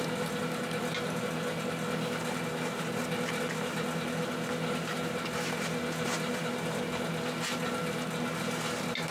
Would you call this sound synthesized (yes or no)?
no